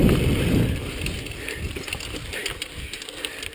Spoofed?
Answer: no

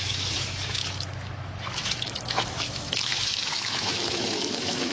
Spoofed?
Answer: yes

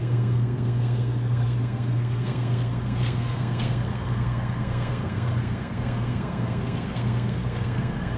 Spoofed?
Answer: yes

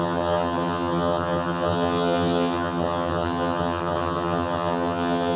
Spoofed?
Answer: yes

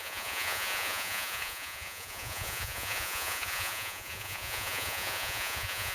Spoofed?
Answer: yes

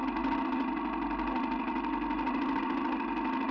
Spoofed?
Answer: no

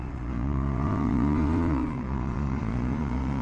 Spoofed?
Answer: yes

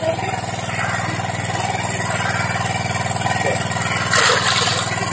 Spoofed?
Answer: no